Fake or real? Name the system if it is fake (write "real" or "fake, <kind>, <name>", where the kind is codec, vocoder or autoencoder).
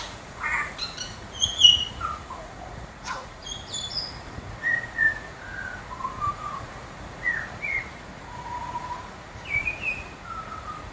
fake, vocoder, Vocos